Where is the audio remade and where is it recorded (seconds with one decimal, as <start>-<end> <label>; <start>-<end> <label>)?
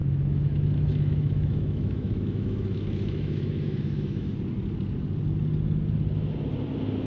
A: 0.0-4.3 remade; 4.3-7.1 recorded